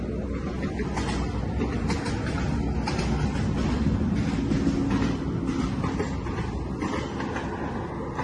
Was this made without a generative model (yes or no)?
yes